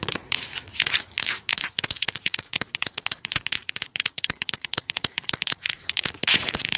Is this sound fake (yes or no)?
yes